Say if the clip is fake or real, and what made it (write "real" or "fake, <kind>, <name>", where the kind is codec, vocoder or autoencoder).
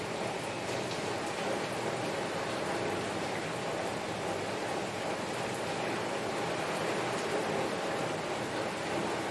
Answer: real